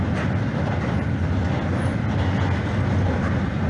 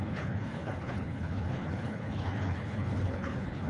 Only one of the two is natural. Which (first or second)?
first